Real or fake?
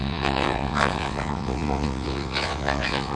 fake